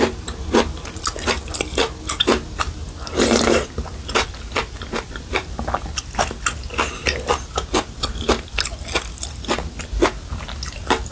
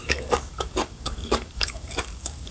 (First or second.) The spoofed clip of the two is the second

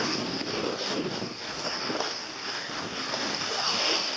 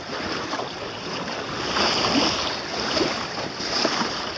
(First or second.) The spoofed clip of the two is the first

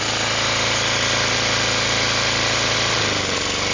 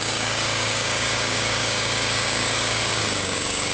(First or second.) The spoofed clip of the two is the second